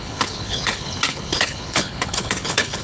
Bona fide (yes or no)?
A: no